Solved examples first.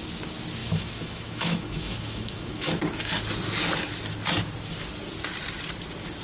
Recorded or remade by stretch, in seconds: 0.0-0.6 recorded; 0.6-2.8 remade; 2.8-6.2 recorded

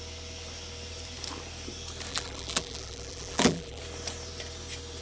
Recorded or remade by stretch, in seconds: 0.0-2.1 recorded; 2.1-3.8 remade; 3.8-5.0 recorded

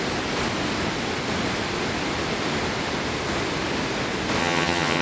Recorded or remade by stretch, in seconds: 0.0-4.4 recorded; 4.4-5.0 remade

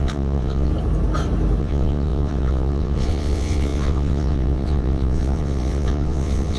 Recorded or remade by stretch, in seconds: 0.0-0.7 remade; 0.7-1.6 recorded; 1.6-6.6 remade

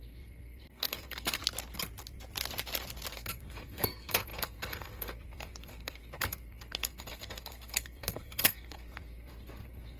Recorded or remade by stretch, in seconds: 0.0-1.4 remade; 1.4-3.1 recorded; 3.1-10.0 remade

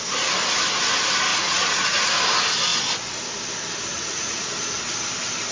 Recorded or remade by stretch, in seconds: 0.0-1.3 recorded; 1.3-2.1 remade; 2.1-3.9 recorded; 3.9-4.5 remade; 4.5-5.5 recorded